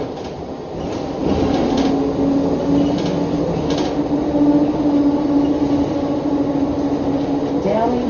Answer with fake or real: real